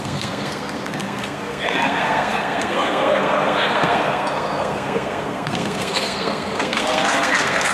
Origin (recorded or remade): remade